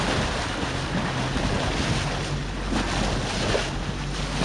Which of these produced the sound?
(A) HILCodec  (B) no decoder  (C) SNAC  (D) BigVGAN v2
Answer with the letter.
B